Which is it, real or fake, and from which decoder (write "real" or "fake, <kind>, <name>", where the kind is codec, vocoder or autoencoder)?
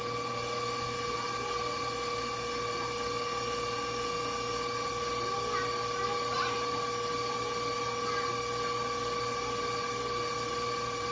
real